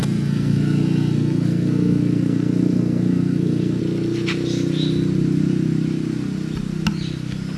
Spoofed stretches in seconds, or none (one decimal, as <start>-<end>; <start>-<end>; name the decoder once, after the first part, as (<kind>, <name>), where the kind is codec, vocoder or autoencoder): 0.0-3.8 (codec, SNAC)